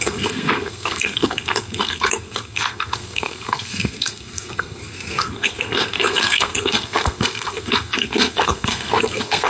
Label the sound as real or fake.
fake